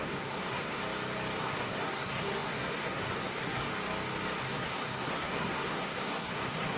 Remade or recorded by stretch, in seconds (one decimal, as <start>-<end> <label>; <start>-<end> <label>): 0.0-0.8 remade; 0.8-1.4 recorded; 1.4-3.7 remade; 3.7-4.4 recorded; 4.4-6.8 remade